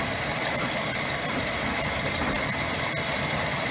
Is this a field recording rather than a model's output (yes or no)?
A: yes